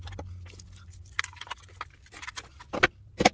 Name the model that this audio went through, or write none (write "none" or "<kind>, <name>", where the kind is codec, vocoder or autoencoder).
none